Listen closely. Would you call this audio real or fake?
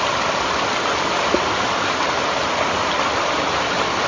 real